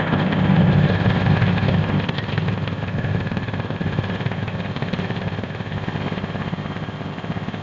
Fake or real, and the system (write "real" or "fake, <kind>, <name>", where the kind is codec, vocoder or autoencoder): fake, codec, ZipCodec